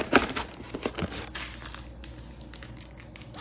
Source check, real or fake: real